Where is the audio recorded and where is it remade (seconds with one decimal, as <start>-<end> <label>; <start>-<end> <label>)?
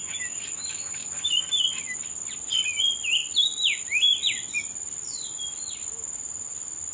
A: 0.0-1.3 remade; 1.3-6.9 recorded